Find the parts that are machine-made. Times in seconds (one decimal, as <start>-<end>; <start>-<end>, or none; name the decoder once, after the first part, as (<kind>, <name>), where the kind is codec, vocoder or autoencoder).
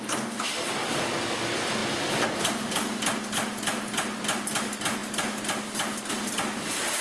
none